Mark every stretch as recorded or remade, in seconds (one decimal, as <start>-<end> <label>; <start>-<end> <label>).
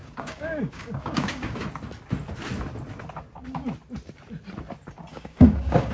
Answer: 0.0-1.6 remade; 1.6-5.1 recorded; 5.1-5.9 remade